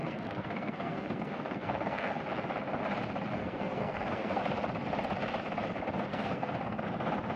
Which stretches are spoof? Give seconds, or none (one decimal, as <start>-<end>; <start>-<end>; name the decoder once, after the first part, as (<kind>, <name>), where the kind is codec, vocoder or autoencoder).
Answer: 0.0-2.2 (codec, SNAC); 3.4-4.4; 6.1-6.8